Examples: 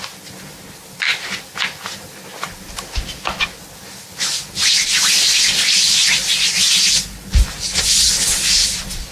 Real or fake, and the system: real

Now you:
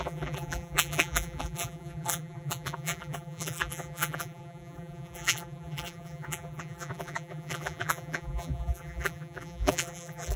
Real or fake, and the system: fake, vocoder, BigVGAN v2